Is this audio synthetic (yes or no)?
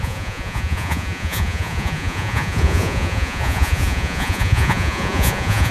yes